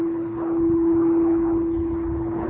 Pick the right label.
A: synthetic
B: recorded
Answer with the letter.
A